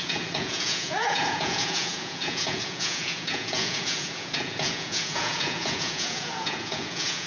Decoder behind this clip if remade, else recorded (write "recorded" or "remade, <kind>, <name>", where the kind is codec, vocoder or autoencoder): remade, vocoder, Vocos